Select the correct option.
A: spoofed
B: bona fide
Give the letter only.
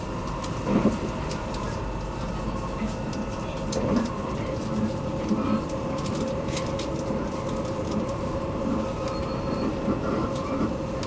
B